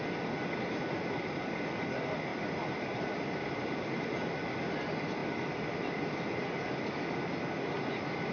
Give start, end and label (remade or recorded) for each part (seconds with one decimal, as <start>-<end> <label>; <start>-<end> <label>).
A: 0.0-2.3 recorded; 2.3-4.4 remade; 4.4-8.3 recorded